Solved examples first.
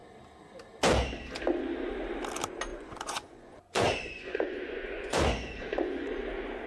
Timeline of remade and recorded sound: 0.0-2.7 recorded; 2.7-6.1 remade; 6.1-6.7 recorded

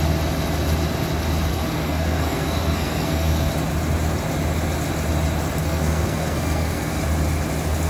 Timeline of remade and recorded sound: 0.0-1.5 recorded; 1.5-3.5 remade; 3.5-5.6 recorded; 5.6-7.0 remade; 7.0-7.9 recorded

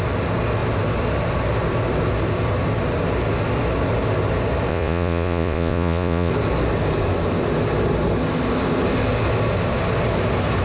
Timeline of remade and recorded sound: 0.0-4.7 recorded; 4.7-6.3 remade; 6.3-10.6 recorded

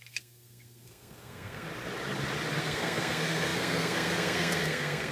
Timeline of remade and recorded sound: 0.0-1.7 remade; 1.7-2.6 recorded; 2.6-5.1 remade

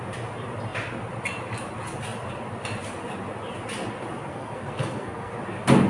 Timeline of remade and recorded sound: 0.0-4.3 recorded; 4.3-5.3 remade; 5.3-5.9 recorded